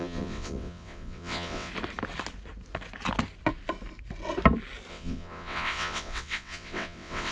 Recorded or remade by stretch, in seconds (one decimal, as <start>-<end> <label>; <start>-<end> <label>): 0.0-1.7 remade; 1.7-4.9 recorded; 4.9-7.3 remade